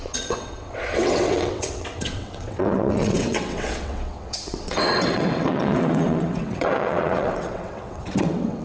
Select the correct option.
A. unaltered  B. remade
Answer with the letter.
B